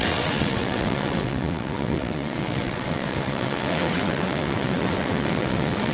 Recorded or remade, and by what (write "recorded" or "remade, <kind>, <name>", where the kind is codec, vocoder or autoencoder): remade, vocoder, WaveNeXt